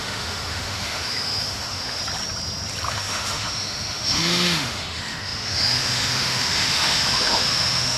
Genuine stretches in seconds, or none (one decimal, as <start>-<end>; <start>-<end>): 2.0-2.9